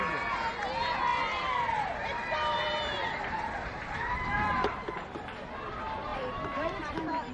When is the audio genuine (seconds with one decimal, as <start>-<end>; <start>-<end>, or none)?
0.0-1.1; 5.5-6.1